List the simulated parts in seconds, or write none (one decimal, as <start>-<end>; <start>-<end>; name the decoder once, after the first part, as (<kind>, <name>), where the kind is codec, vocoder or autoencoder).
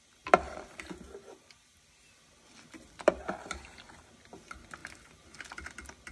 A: none